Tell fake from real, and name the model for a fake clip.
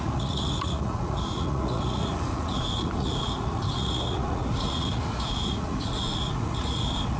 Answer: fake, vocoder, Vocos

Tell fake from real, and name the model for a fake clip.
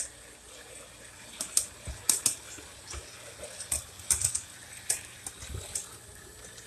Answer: real